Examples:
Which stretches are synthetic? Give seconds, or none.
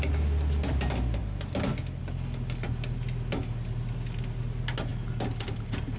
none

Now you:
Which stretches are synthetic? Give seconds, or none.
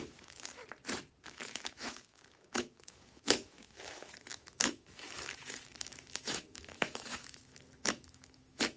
0.0-0.6 (autoencoder, DAC-VAE); 1.2-8.8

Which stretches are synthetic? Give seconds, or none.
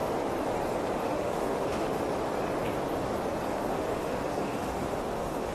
1.0-2.0 (autoencoder, DAC-VAE); 3.5-5.5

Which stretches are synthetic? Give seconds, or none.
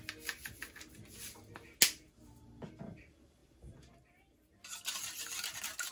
none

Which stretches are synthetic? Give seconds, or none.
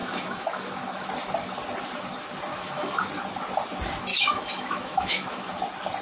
0.0-1.1 (autoencoder, DAC-VAE); 2.5-3.1; 4.1-5.5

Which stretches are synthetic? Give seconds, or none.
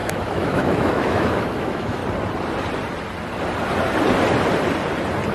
0.0-2.0 (autoencoder, DAC-VAE)